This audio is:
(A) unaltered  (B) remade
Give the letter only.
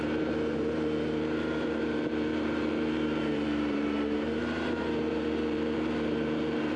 B